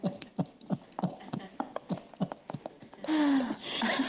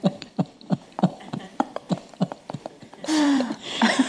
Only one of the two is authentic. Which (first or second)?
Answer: first